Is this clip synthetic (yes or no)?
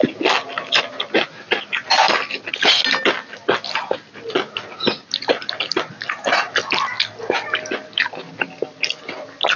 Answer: no